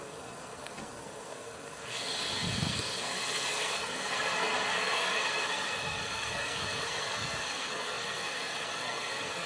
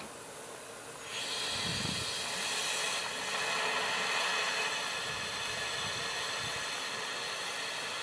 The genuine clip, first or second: second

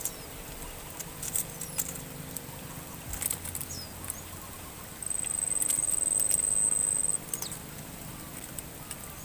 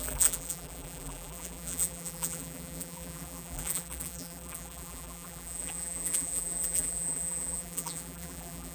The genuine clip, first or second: first